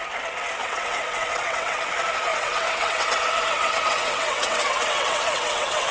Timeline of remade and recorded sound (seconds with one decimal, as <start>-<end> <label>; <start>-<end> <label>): 0.0-0.6 recorded; 0.6-1.8 remade; 1.8-2.3 recorded; 2.3-5.9 remade